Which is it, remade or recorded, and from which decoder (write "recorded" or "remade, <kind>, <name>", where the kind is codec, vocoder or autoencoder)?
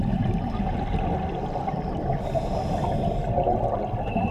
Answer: recorded